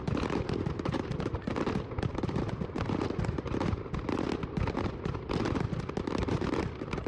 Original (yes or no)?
yes